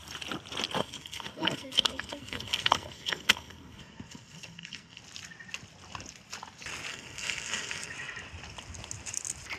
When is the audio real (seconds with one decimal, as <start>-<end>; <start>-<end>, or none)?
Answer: 0.0-0.8; 5.0-6.9; 7.9-9.6